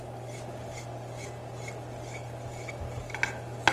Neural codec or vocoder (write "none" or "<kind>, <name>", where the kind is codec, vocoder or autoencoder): none